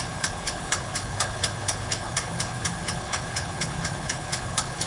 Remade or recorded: remade